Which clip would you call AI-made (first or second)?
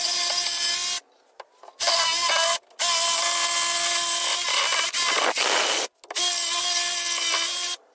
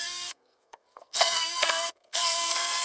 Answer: second